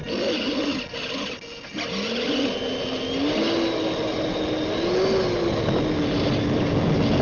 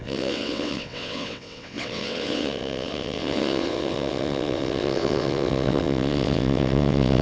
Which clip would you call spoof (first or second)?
second